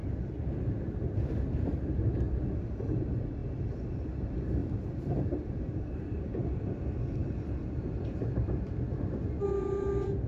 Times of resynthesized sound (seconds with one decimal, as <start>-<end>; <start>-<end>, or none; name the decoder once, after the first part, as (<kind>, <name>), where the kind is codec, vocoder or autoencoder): 4.6-6.2 (vocoder, BigVGAN v2); 7.2-8.6